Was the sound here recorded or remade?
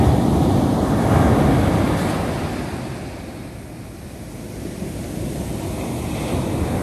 recorded